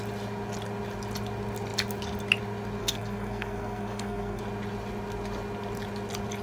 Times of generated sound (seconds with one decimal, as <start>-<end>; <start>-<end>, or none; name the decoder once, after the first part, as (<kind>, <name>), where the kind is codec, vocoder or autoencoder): 2.8-4.4 (codec, SNAC)